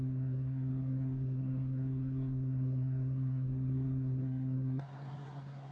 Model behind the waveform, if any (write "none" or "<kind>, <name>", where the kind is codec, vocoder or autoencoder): codec, SNAC